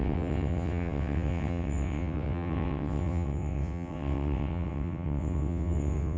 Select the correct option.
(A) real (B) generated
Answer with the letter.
B